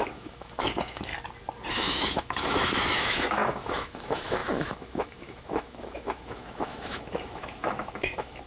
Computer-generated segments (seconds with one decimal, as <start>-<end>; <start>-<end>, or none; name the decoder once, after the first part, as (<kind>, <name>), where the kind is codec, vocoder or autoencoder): 0.0-1.1 (autoencoder, DAC-VAE); 1.7-8.5